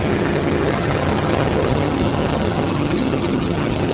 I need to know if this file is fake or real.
fake